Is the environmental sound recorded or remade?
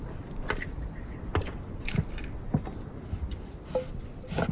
recorded